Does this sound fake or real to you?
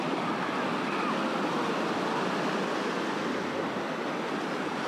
real